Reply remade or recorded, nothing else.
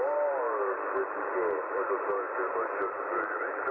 recorded